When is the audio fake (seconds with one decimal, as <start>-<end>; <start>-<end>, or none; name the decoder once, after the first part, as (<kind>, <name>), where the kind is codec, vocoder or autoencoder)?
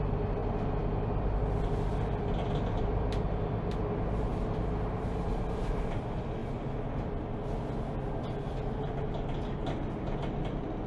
none